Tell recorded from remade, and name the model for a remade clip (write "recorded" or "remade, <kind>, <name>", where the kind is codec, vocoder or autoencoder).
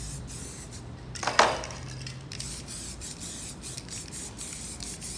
remade, vocoder, BigVGAN v2